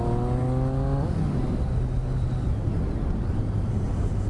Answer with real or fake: real